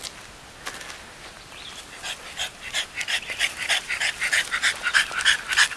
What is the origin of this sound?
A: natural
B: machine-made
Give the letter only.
A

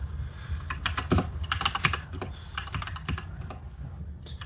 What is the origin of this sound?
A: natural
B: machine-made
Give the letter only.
A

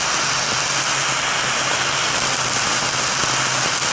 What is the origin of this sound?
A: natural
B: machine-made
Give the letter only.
A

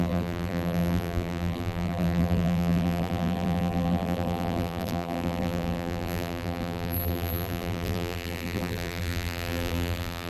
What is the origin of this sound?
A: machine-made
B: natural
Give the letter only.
A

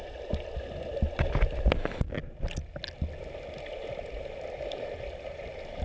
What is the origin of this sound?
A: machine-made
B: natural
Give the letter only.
B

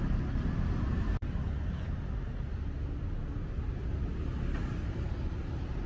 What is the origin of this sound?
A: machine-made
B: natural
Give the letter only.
B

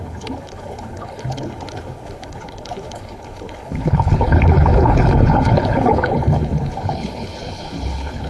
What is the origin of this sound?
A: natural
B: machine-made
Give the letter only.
B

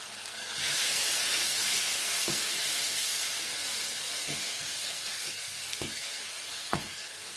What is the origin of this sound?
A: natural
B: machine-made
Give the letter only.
B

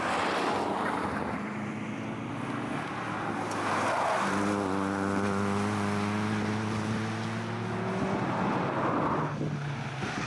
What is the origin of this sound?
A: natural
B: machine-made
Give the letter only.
A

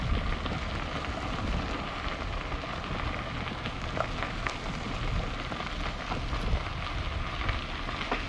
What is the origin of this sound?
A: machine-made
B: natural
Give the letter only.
B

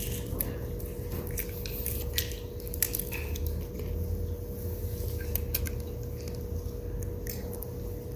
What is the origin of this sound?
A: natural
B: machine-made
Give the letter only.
A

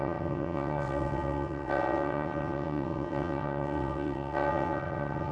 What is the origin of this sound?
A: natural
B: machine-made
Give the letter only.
B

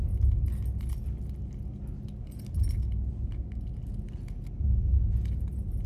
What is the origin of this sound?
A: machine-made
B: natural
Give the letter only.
B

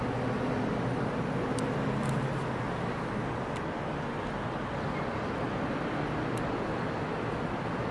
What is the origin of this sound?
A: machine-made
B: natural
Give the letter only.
B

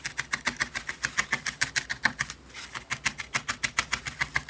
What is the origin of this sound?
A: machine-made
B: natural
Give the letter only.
B